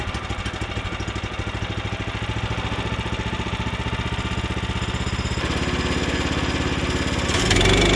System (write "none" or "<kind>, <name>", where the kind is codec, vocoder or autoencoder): none